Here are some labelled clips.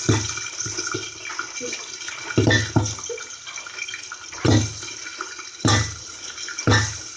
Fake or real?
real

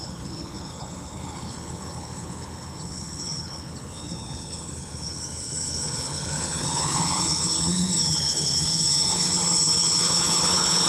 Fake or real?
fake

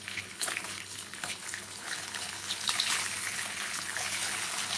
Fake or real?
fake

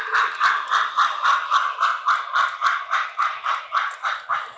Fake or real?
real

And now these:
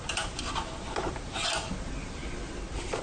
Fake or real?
real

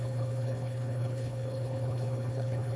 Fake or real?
fake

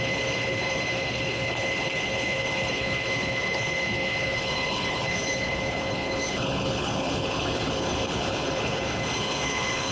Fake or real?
fake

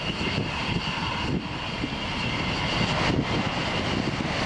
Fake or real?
real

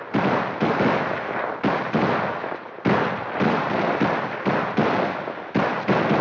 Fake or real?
real